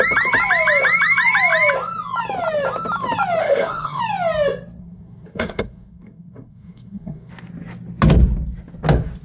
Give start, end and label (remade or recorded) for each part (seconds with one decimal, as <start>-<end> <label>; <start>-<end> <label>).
0.0-3.4 recorded; 3.4-4.0 remade; 4.0-4.8 recorded; 4.8-7.3 remade; 7.3-9.2 recorded